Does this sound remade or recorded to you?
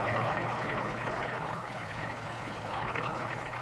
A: remade